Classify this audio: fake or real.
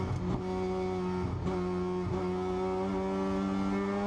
real